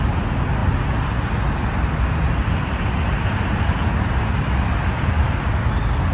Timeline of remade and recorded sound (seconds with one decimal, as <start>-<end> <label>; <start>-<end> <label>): 0.0-6.1 recorded